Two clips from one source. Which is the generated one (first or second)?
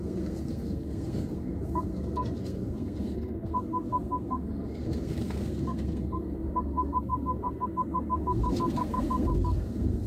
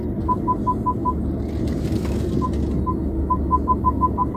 first